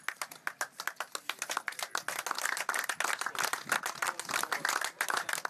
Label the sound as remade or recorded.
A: recorded